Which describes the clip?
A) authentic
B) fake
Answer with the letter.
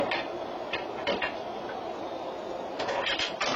A